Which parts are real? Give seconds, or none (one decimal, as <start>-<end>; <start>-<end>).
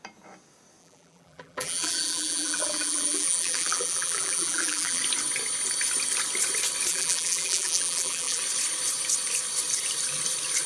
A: 0.0-0.8; 5.0-6.9; 8.4-10.7